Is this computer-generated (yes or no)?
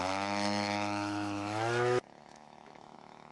yes